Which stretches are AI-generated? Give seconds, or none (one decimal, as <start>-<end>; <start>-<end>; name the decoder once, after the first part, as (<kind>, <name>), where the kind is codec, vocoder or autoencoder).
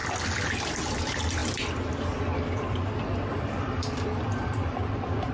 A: 0.7-1.4 (vocoder, BigVGAN v2); 1.9-5.3